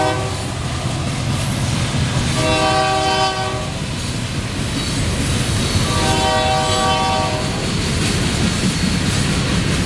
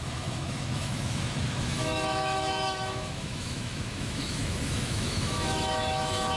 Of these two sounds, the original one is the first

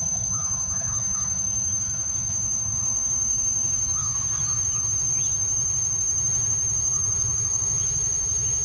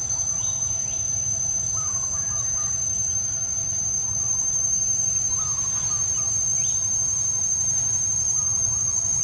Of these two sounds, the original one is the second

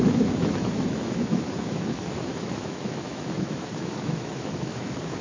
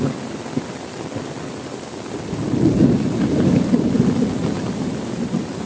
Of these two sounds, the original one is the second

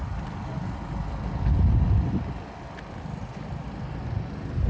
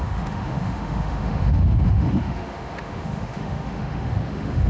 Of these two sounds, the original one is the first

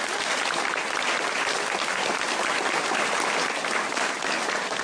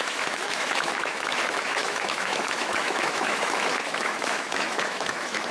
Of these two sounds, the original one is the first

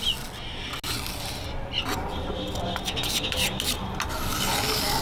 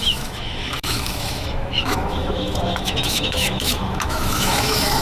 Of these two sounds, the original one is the first